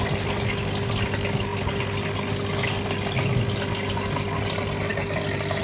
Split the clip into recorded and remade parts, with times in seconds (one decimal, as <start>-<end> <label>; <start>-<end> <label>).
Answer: 0.0-5.6 recorded